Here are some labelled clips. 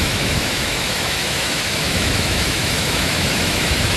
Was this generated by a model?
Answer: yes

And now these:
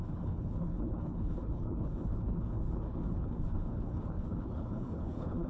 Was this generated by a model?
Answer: yes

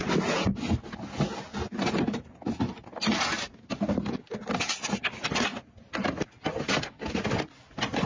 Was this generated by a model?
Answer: no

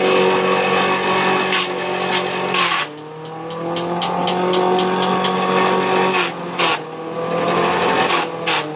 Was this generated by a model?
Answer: no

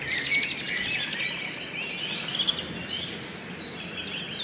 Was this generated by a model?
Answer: no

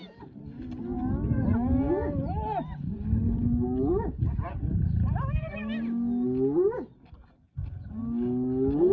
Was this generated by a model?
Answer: no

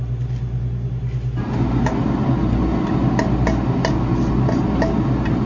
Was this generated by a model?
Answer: no